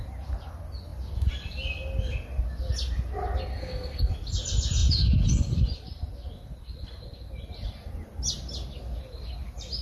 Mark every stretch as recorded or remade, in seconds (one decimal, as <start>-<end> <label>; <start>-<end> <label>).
0.0-3.5 recorded; 3.5-4.1 remade; 4.1-9.8 recorded